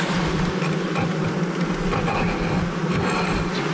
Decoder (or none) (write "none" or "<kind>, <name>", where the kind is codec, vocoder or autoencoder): none